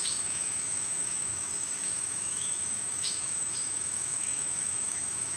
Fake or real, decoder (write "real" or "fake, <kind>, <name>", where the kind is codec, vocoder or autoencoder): fake, autoencoder, DAC-VAE